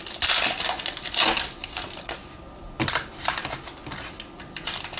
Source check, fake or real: real